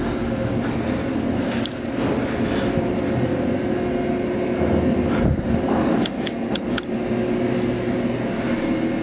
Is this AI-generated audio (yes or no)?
no